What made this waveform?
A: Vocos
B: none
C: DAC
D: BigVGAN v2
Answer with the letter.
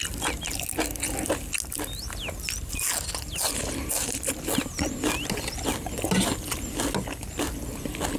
B